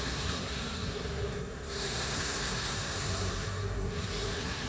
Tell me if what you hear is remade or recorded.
remade